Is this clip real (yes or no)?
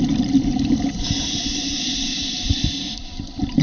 yes